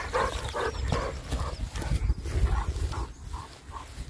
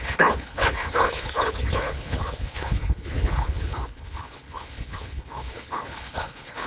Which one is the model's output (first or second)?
second